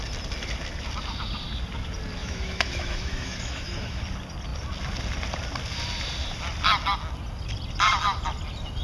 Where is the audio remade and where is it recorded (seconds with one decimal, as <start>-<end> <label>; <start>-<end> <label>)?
0.0-2.2 recorded; 2.2-4.0 remade; 4.0-8.8 recorded